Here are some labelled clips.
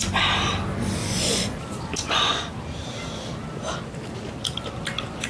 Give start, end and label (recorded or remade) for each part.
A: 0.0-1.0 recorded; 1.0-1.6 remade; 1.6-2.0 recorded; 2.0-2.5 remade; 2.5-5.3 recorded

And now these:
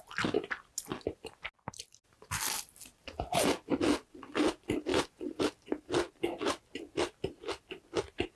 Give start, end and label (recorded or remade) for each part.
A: 0.0-4.9 recorded; 4.9-5.4 remade; 5.4-8.3 recorded

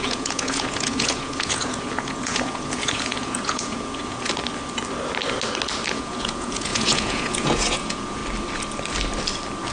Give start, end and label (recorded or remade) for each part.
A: 0.0-4.3 remade; 4.3-5.9 recorded; 5.9-8.2 remade; 8.2-9.7 recorded

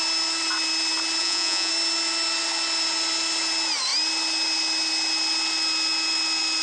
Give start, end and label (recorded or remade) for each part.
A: 0.0-1.2 recorded; 1.2-1.7 remade; 1.7-6.6 recorded

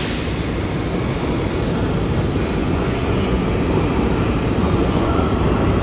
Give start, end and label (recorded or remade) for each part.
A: 0.0-2.6 recorded; 2.6-3.4 remade; 3.4-4.6 recorded; 4.6-5.3 remade; 5.3-5.8 recorded